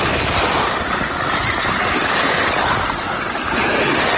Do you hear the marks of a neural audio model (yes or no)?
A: no